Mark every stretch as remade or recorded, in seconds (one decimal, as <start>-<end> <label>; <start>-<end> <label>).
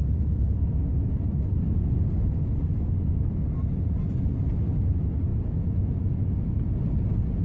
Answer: 0.0-5.3 recorded; 5.3-6.6 remade; 6.6-7.4 recorded